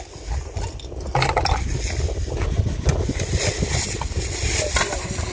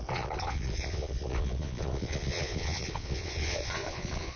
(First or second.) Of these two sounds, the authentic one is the first